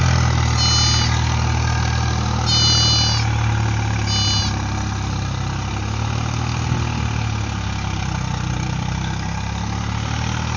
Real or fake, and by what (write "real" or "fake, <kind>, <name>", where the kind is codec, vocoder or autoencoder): real